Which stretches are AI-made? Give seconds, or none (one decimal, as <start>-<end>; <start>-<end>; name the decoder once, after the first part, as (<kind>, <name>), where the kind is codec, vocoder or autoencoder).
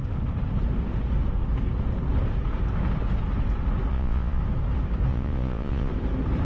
3.9-4.4 (vocoder, Vocos); 5.1-5.9